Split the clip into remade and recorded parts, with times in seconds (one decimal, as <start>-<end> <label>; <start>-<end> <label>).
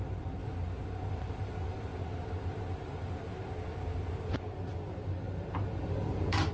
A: 0.0-0.4 remade; 0.4-1.1 recorded; 1.1-1.9 remade; 1.9-4.9 recorded; 4.9-6.5 remade